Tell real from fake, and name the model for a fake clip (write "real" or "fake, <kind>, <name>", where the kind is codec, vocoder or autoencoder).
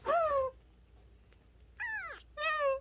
real